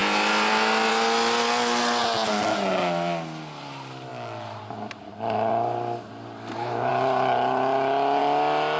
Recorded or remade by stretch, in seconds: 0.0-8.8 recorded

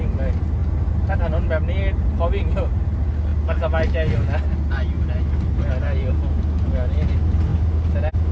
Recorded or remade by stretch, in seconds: 0.0-8.3 recorded

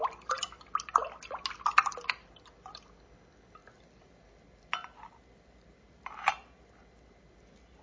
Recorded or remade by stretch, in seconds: 0.0-7.8 recorded

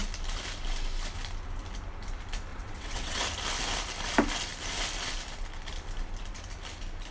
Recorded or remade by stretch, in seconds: 0.0-2.5 recorded; 2.5-3.2 remade; 3.2-7.1 recorded